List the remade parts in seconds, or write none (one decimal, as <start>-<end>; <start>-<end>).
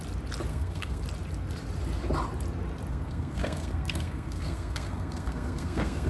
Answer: 0.5-1.0; 2.9-6.1